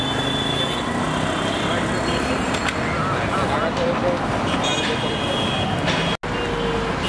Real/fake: real